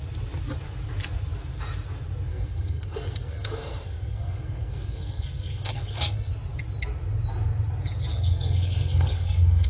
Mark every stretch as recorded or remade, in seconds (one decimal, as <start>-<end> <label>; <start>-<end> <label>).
0.0-2.3 recorded; 2.3-6.3 remade; 6.3-8.1 recorded; 8.1-9.7 remade